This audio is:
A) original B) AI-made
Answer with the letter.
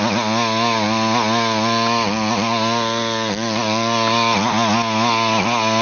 A